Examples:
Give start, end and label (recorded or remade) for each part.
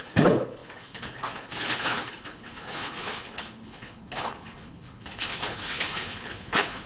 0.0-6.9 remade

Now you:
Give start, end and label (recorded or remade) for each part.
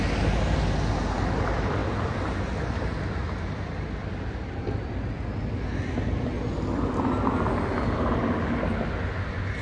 0.0-9.6 recorded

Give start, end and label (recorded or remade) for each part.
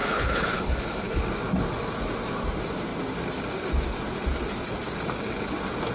0.0-1.2 remade; 1.2-5.9 recorded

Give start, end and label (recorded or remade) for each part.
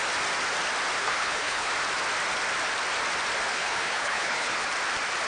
0.0-1.0 recorded; 1.0-1.7 remade; 1.7-3.5 recorded; 3.5-4.7 remade; 4.7-5.3 recorded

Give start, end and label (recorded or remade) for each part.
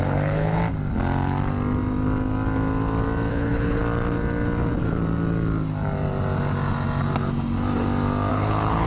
0.0-0.6 remade; 0.6-3.3 recorded; 3.3-3.8 remade; 3.8-8.3 recorded; 8.3-8.9 remade